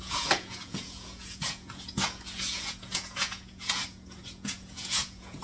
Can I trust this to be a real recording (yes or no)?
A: no